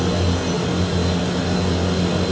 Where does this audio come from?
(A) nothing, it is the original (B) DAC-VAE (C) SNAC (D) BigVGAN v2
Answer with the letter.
A